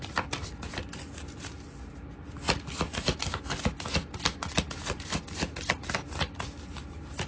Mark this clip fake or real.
real